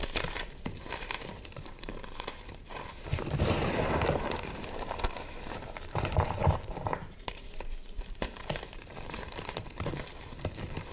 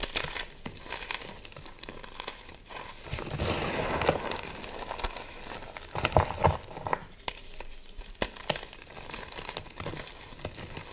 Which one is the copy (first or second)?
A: first